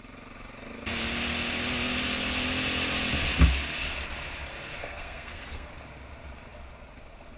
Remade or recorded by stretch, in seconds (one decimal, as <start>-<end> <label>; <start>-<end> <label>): 0.0-4.8 recorded; 4.8-5.7 remade; 5.7-7.4 recorded